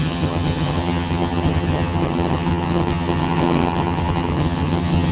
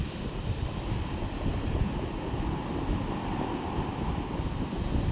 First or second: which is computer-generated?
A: first